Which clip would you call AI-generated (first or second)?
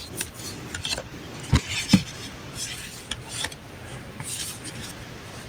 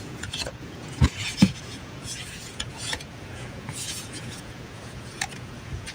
second